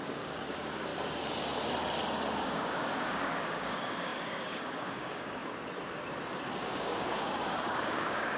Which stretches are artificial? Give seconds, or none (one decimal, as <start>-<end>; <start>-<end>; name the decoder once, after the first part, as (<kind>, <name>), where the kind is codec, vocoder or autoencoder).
0.0-0.9 (codec, DAC); 2.4-5.4; 6.7-8.4